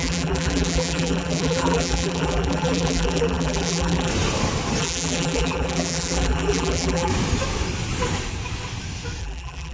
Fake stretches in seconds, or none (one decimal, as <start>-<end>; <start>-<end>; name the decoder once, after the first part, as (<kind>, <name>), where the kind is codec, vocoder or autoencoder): 0.0-4.1 (vocoder, BigVGAN v2); 4.8-7.1; 9.2-9.7